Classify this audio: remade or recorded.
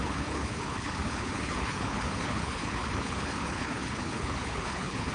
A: remade